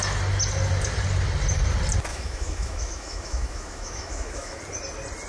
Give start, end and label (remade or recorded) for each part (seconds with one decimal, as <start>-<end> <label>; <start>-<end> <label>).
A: 0.0-2.1 recorded; 2.1-4.6 remade; 4.6-5.3 recorded